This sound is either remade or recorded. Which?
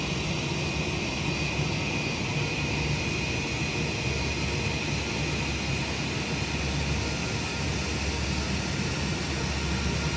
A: recorded